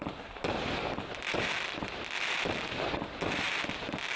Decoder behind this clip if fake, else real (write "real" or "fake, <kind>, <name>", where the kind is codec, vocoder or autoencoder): real